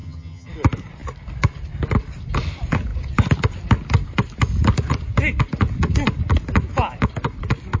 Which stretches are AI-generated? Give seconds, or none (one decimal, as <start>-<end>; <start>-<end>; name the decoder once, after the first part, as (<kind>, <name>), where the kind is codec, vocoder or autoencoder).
0.0-0.5 (vocoder, HiFi-GAN)